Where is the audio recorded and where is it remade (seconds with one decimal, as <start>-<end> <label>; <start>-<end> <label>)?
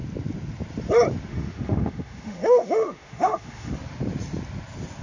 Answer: 0.0-1.3 recorded; 1.3-3.7 remade; 3.7-5.0 recorded